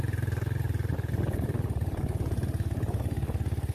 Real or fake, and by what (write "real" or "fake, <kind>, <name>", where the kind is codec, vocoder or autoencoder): real